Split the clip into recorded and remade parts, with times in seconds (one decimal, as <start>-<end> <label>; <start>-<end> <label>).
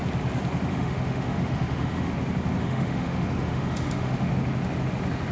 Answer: 0.0-0.7 recorded; 0.7-2.1 remade; 2.1-2.6 recorded; 2.6-4.3 remade; 4.3-5.3 recorded